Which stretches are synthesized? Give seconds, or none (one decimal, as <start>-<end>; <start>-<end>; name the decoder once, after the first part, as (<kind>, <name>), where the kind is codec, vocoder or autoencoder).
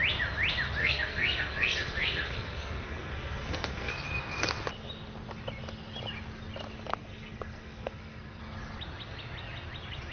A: 0.8-3.9 (codec, SNAC); 6.9-8.4